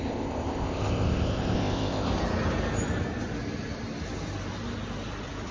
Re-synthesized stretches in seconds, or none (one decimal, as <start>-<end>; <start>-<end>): 0.0-2.1